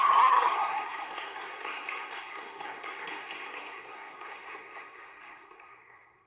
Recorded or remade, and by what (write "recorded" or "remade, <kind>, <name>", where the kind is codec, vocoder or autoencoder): remade, codec, SNAC